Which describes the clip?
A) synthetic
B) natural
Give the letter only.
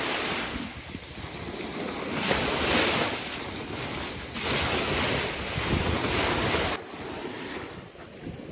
B